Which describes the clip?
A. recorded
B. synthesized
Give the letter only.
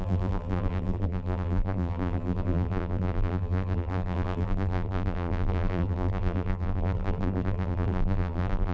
B